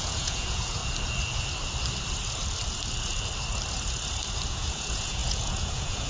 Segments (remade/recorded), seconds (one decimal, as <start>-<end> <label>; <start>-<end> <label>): 0.0-0.8 remade; 0.8-4.5 recorded; 4.5-6.1 remade